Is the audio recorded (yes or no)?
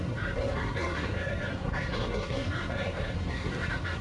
no